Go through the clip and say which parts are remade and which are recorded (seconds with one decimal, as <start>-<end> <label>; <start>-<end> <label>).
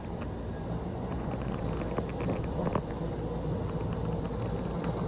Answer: 0.0-0.9 recorded; 0.9-1.6 remade; 1.6-5.1 recorded